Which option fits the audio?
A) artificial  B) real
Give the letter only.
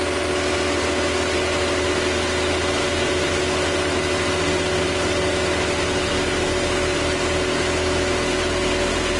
B